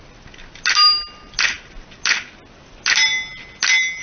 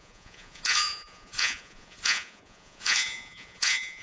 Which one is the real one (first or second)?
first